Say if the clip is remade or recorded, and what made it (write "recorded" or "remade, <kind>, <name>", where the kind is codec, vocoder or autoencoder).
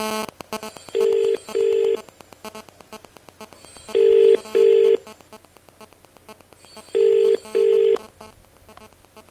recorded